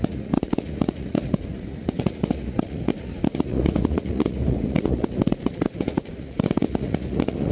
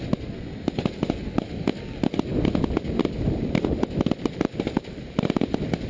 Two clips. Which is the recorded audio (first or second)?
second